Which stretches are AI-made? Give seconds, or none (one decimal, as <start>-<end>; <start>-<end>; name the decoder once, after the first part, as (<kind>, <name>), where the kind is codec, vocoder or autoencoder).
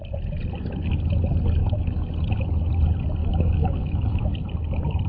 1.6-2.1 (autoencoder, DAC-VAE); 3.2-4.3